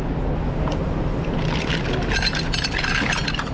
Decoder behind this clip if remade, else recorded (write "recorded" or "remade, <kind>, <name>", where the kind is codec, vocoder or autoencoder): recorded